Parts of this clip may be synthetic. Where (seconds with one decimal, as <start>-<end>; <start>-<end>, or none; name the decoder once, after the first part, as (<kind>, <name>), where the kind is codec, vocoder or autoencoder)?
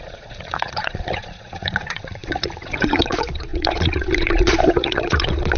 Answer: 0.0-5.6 (vocoder, Vocos)